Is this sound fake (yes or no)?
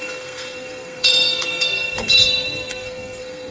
yes